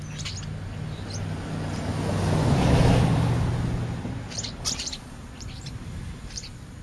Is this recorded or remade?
recorded